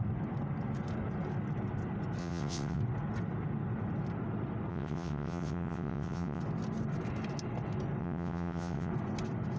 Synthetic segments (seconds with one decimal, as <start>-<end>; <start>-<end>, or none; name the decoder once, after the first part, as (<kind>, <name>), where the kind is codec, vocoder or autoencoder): 2.2-2.8 (vocoder, WaveNeXt); 4.7-6.4; 8.0-8.9